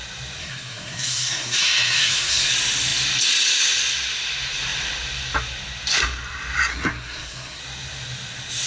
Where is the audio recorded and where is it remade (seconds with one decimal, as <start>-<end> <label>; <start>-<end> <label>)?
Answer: 0.0-0.4 recorded; 0.4-2.5 remade; 2.5-6.7 recorded; 6.7-7.6 remade; 7.6-8.7 recorded